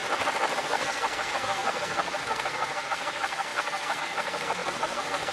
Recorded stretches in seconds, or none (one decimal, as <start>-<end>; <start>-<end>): 0.0-0.6